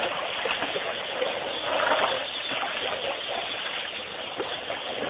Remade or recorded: recorded